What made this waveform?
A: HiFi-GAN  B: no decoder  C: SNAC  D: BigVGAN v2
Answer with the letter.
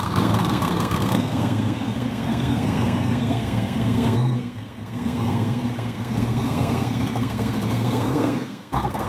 C